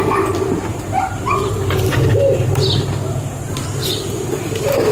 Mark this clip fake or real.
real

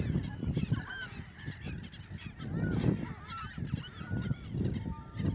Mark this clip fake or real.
real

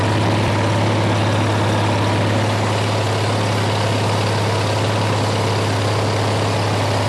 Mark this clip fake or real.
real